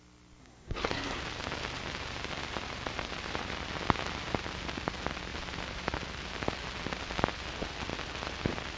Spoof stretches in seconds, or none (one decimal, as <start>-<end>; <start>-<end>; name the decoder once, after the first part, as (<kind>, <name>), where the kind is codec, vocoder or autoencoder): 0.4-1.2 (codec, SNAC)